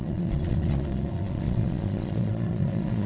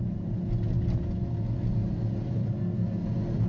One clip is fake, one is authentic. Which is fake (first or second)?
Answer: first